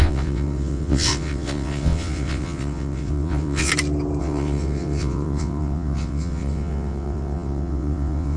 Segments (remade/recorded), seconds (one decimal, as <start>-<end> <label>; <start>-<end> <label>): 0.0-3.7 remade; 3.7-4.2 recorded; 4.2-8.4 remade